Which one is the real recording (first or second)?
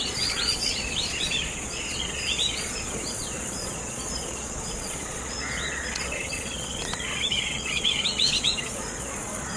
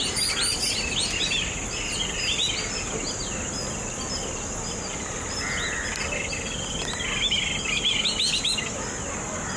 second